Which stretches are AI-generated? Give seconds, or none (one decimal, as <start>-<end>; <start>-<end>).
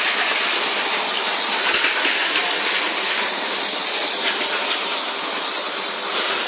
0.0-1.3; 3.2-3.8; 4.5-4.9